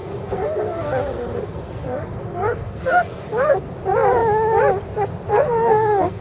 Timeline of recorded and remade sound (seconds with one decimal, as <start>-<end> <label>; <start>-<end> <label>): 0.0-3.7 remade; 3.7-5.3 recorded; 5.3-6.2 remade